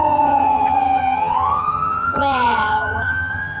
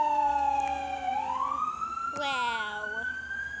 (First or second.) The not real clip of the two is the first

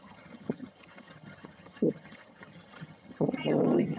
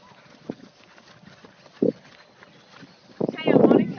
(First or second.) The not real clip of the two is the first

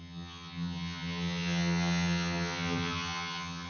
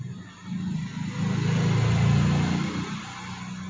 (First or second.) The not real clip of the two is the first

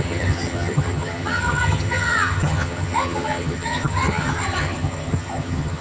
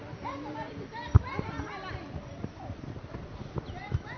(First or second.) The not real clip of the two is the first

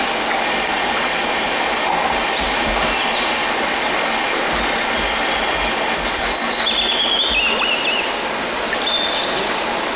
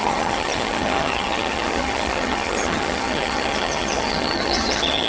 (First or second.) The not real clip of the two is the second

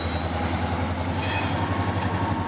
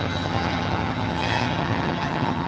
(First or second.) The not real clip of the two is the second